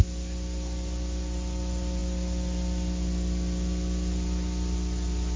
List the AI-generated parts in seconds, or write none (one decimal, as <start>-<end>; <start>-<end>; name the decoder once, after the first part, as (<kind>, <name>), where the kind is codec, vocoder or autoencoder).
none